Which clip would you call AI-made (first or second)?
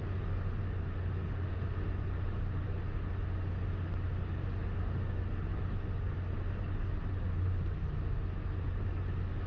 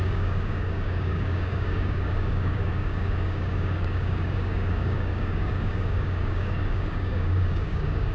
second